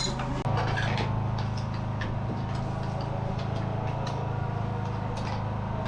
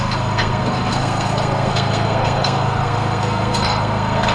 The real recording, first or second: first